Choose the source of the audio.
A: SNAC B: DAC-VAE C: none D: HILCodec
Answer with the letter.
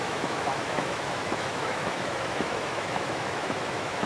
B